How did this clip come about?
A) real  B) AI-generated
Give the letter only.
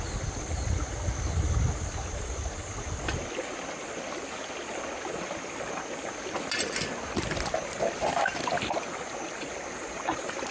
A